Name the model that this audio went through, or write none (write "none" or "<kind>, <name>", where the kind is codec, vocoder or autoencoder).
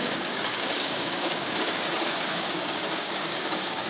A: codec, DAC